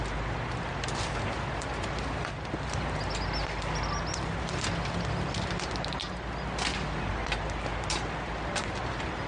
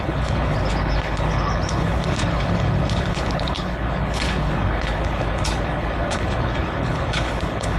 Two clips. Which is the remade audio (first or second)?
second